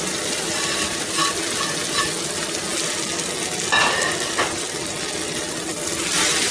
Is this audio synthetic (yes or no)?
no